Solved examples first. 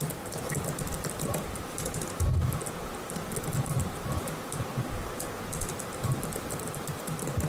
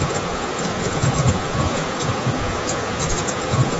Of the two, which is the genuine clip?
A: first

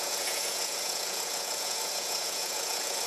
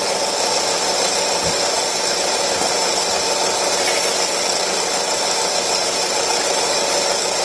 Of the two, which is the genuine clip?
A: second